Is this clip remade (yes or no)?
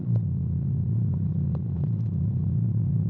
yes